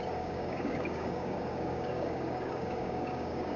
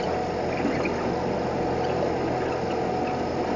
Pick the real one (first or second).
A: second